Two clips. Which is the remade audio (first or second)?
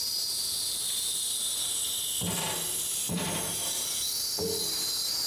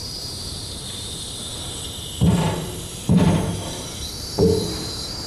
second